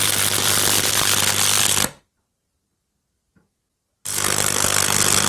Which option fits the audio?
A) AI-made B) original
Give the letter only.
B